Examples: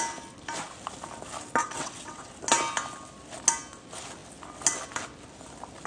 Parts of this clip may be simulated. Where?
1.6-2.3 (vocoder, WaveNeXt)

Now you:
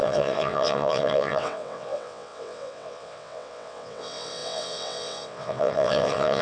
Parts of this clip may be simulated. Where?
0.0-6.4 (vocoder, WaveNeXt)